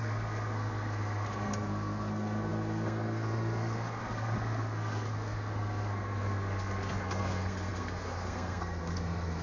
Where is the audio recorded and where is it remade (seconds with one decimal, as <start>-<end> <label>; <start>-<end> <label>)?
0.0-9.4 remade